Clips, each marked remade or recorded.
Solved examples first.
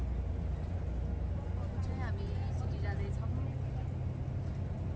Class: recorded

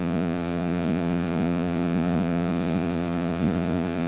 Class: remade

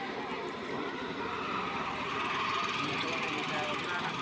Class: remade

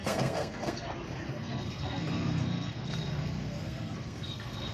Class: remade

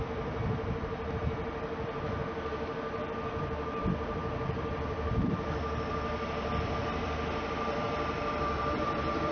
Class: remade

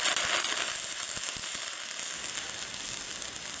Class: recorded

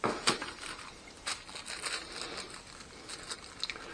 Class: recorded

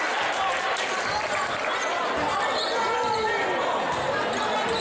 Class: recorded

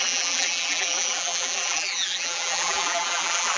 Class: remade